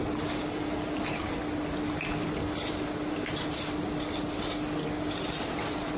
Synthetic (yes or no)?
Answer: no